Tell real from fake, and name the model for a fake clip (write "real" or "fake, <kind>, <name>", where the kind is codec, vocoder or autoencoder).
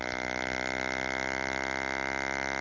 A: real